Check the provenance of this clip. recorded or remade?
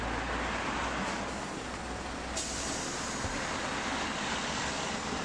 recorded